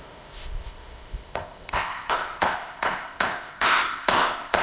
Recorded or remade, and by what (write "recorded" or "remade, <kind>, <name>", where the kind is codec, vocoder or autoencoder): remade, codec, ZipCodec